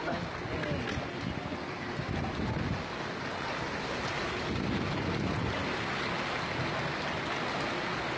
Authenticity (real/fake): real